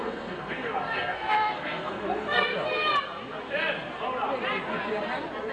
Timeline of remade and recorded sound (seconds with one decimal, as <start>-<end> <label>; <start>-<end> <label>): 0.0-2.5 remade; 2.5-5.5 recorded